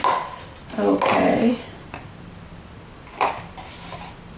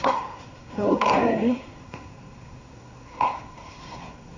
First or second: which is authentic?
first